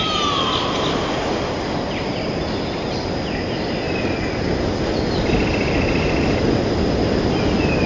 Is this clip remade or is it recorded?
recorded